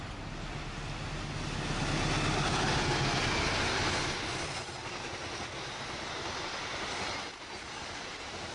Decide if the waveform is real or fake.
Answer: real